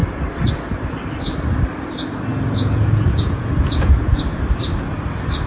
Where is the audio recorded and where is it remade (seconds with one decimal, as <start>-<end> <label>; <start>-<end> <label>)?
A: 0.0-2.3 recorded; 2.3-4.2 remade; 4.2-5.5 recorded